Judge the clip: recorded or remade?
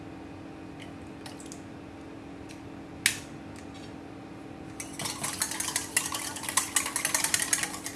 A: recorded